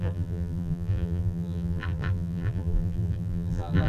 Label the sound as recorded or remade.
remade